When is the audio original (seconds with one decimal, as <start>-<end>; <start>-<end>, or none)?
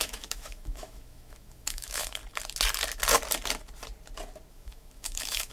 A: 2.2-4.5